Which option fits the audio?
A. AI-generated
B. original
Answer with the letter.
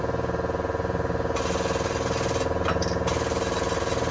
B